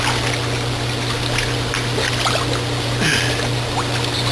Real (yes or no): yes